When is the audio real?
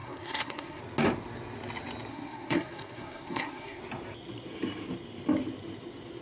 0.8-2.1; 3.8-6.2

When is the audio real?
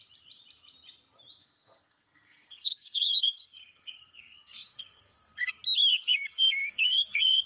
0.0-1.4; 5.5-5.9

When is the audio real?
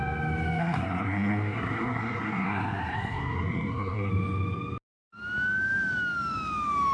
0.0-0.6; 4.1-6.9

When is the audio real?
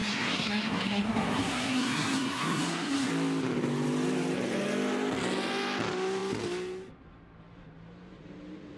3.1-8.8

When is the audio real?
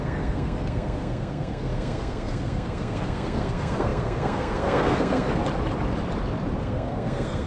5.4-6.6